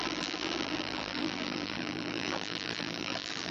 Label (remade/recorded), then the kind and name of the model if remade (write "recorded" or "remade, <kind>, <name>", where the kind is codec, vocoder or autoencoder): remade, vocoder, BigVGAN v2